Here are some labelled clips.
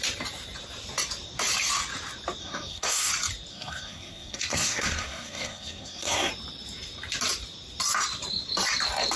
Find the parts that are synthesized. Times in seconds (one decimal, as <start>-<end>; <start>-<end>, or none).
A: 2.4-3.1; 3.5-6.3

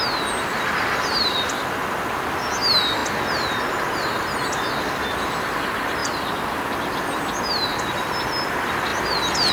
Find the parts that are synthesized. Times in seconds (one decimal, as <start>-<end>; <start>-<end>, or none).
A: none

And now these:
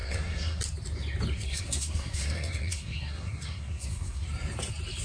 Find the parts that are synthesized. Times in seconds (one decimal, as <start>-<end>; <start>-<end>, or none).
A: 0.0-0.6; 1.3-4.3